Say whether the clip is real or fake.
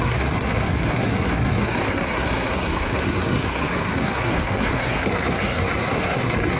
fake